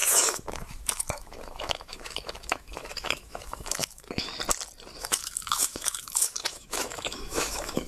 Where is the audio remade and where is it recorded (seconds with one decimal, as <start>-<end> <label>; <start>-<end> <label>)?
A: 0.0-4.3 remade; 4.3-5.0 recorded; 5.0-7.9 remade